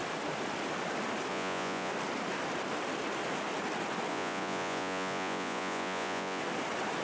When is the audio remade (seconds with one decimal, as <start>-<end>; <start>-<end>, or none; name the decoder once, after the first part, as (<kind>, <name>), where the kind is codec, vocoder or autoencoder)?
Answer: 1.3-1.9 (vocoder, Vocos); 4.1-6.4